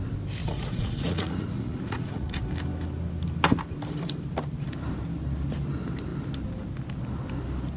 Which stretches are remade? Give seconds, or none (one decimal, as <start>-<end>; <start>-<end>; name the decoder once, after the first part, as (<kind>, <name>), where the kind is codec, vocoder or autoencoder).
0.4-2.4 (vocoder, Vocos)